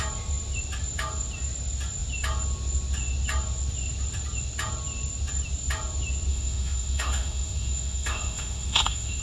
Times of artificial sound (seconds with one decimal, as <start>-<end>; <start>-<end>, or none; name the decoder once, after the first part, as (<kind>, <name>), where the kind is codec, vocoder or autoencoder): 6.3-9.2 (autoencoder, DAC-VAE)